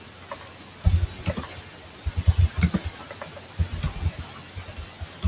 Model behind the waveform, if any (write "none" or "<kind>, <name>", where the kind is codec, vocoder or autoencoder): none